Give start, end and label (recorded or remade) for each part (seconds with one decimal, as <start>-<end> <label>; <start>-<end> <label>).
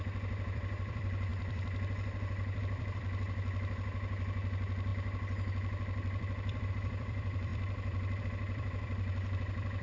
0.0-9.8 remade